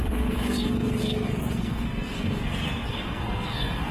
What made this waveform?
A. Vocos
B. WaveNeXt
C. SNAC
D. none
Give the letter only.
C